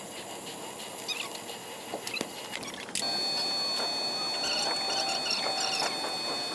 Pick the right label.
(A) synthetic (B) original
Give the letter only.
B